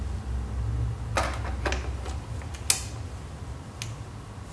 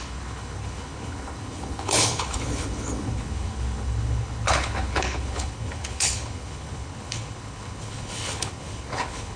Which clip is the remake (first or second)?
second